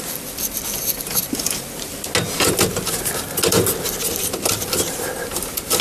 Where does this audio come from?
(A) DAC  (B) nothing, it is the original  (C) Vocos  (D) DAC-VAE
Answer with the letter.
B